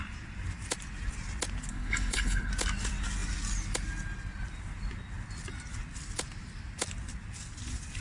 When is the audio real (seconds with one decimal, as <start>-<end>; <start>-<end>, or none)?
0.0-1.7; 2.5-8.0